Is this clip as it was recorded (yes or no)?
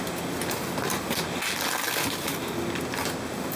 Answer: yes